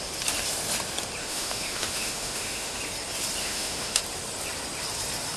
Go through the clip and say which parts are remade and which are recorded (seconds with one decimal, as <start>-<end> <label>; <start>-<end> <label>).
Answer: 0.0-1.2 recorded; 1.2-2.8 remade; 2.8-3.4 recorded; 3.4-4.0 remade; 4.0-5.4 recorded